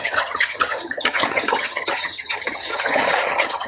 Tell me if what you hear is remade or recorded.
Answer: remade